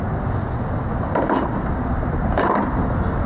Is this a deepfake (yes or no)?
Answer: no